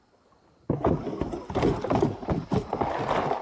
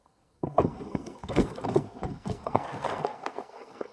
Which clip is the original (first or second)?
first